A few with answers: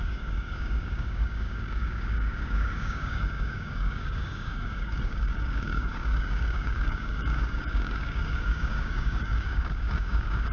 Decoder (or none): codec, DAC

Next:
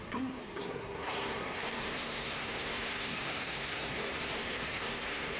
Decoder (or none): codec, SNAC